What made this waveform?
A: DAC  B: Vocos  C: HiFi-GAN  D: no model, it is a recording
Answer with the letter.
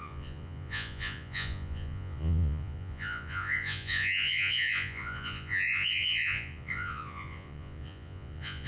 B